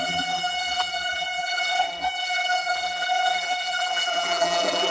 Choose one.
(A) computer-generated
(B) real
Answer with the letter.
A